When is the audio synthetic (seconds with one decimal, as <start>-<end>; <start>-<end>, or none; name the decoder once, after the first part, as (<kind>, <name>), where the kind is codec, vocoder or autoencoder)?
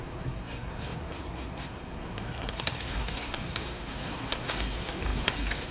0.0-5.7 (codec, SNAC)